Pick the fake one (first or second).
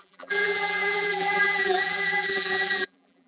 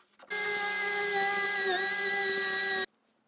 first